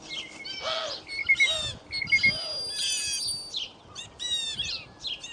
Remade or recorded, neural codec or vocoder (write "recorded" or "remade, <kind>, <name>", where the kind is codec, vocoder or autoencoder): recorded